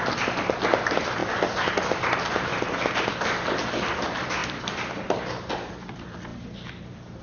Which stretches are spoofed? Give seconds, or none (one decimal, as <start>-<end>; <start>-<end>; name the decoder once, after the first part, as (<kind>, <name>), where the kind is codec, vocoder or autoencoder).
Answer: 0.0-1.2 (vocoder, BigVGAN v2); 2.0-2.5; 3.8-7.2